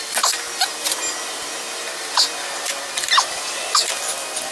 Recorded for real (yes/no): yes